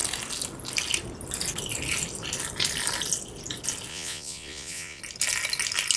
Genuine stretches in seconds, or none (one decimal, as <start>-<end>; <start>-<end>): 0.0-3.9; 5.0-6.0